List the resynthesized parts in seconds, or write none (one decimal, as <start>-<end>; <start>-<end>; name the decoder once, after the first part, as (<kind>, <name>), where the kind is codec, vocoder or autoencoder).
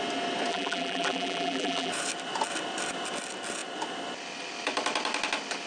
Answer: 0.5-1.9 (vocoder, BigVGAN v2)